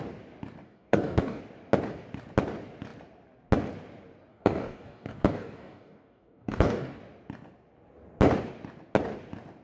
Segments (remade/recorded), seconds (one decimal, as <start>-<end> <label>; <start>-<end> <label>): 0.0-0.6 recorded; 0.6-1.4 remade; 1.4-4.3 recorded; 4.3-7.0 remade; 7.0-9.6 recorded